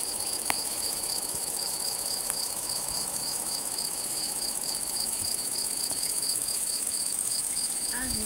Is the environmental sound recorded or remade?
remade